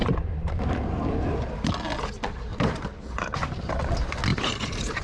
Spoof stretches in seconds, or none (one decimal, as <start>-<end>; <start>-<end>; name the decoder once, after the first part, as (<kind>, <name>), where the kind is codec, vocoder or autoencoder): 0.0-0.7 (vocoder, BigVGAN v2); 2.5-3.8; 4.3-5.0